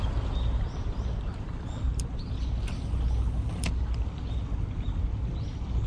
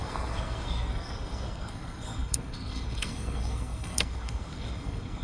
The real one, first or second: first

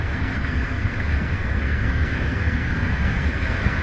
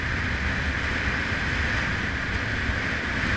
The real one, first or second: second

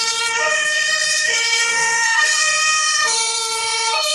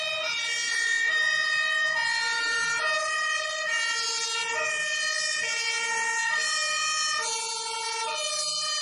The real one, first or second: second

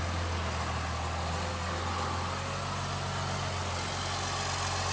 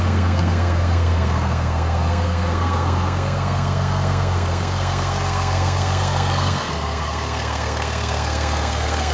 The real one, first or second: first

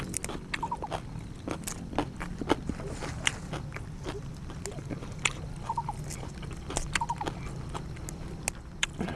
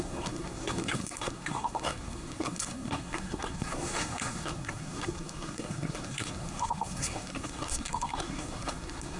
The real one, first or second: first